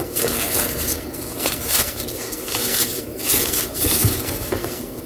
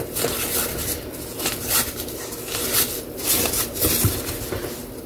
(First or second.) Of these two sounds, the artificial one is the first